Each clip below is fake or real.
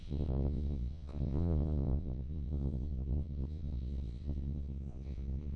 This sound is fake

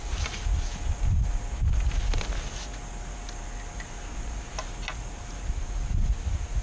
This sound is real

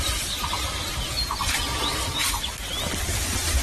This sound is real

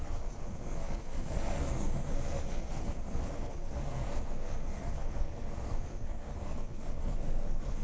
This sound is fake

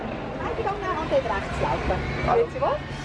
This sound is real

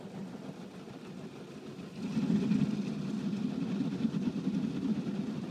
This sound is real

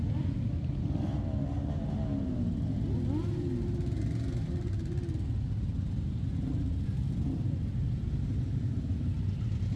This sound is real